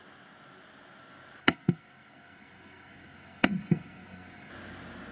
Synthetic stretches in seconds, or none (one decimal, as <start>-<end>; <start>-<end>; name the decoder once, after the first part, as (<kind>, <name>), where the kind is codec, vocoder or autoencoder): 1.4-4.5 (codec, SNAC)